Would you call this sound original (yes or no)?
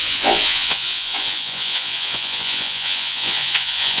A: no